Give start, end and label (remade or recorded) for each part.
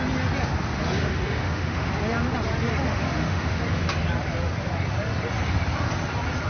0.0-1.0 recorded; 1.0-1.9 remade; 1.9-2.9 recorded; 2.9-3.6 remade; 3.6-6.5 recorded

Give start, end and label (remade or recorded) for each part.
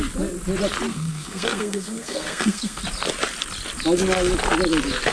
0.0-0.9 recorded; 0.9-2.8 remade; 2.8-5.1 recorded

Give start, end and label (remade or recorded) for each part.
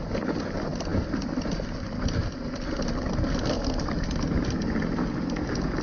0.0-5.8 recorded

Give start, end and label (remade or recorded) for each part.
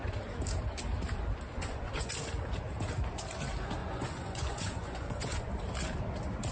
0.0-1.5 recorded; 1.5-2.1 remade; 2.1-3.8 recorded; 3.8-5.6 remade; 5.6-6.5 recorded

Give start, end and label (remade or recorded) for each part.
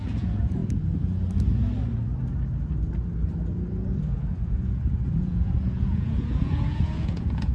0.0-0.6 remade; 0.6-4.0 recorded; 4.0-7.5 remade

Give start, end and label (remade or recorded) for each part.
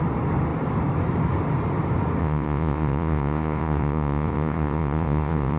0.0-2.2 recorded; 2.2-5.6 remade